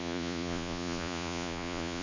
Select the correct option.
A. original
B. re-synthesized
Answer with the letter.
B